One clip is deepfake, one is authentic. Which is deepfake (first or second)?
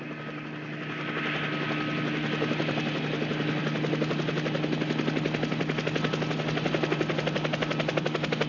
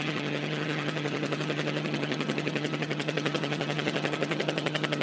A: second